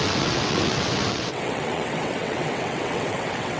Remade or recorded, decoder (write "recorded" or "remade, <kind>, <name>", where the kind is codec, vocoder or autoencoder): remade, vocoder, WaveNeXt